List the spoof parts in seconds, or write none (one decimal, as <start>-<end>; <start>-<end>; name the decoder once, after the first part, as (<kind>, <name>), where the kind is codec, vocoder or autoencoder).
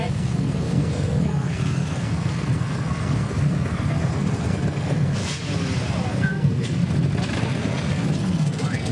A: 0.0-5.2 (codec, SNAC); 6.1-6.8; 7.4-8.9